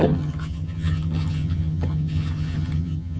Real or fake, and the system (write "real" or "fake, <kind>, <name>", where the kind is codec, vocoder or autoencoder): fake, vocoder, HiFi-GAN